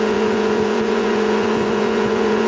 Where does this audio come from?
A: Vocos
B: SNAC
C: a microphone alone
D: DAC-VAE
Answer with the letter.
A